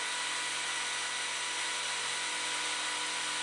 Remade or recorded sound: recorded